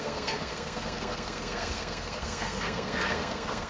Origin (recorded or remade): remade